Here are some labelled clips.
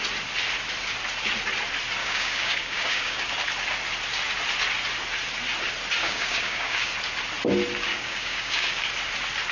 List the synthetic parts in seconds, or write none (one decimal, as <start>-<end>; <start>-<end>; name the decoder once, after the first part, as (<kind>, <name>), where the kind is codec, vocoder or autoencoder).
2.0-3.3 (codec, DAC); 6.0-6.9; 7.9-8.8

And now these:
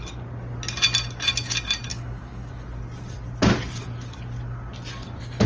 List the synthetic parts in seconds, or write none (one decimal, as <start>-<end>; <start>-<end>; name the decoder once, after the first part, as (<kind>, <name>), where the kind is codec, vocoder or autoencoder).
1.9-2.5 (codec, DAC)

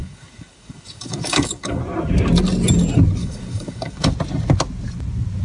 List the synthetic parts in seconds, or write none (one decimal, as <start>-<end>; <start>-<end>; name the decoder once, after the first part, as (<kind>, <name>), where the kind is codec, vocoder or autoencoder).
0.0-1.8 (codec, DAC); 3.2-4.1